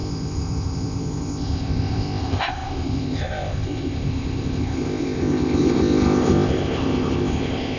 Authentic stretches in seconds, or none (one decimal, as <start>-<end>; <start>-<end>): none